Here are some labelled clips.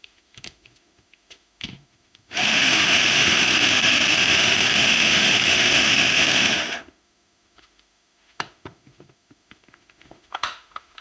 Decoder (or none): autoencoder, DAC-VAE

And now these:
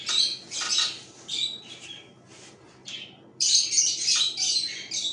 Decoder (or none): none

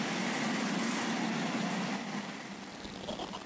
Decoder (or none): none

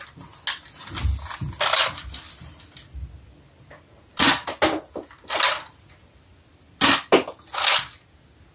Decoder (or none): none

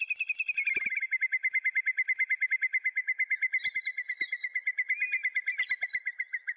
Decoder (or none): none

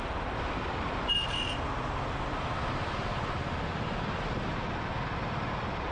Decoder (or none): none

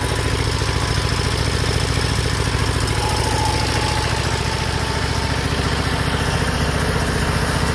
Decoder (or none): none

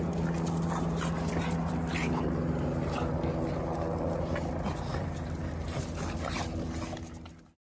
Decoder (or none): none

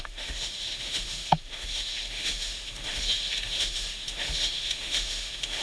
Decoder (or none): autoencoder, DAC-VAE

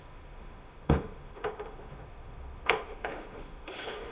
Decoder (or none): autoencoder, DAC-VAE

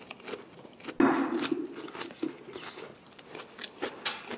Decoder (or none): none